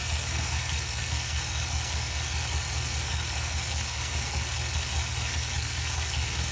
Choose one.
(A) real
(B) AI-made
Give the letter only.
B